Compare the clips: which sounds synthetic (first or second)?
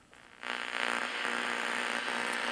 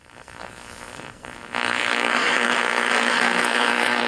second